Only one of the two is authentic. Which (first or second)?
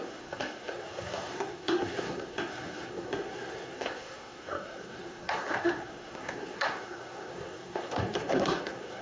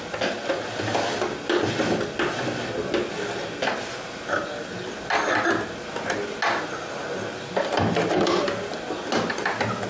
second